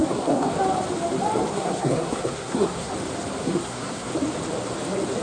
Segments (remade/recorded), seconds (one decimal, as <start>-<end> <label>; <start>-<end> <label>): 0.0-0.5 remade; 0.5-1.5 recorded; 1.5-2.9 remade; 2.9-3.4 recorded; 3.4-4.1 remade; 4.1-5.2 recorded